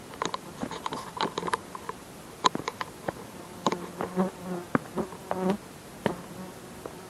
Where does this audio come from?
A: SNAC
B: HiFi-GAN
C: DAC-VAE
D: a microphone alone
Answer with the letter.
D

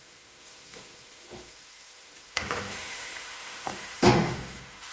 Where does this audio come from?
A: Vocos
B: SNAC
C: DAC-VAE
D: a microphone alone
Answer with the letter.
C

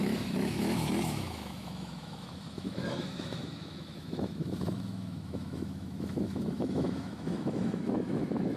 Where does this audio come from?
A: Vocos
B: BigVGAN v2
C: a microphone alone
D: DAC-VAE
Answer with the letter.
D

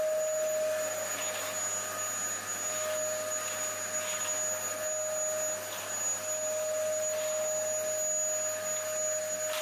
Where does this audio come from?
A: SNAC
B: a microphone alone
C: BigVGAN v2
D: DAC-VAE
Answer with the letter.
B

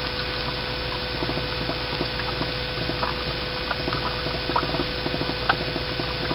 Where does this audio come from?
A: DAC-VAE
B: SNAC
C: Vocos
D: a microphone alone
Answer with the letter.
D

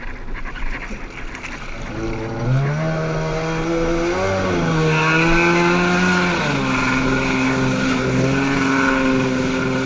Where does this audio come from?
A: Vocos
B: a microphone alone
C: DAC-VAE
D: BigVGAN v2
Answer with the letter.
B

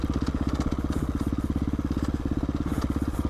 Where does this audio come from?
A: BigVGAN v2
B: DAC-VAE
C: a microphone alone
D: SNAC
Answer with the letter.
C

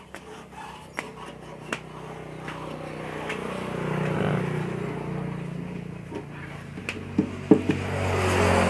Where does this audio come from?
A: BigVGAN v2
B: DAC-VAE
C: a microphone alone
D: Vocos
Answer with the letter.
C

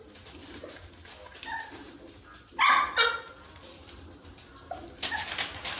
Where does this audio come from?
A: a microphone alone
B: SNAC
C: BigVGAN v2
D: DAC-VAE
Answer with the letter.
A